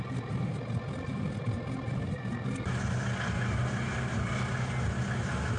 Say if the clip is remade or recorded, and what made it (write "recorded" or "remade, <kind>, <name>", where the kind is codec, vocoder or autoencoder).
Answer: recorded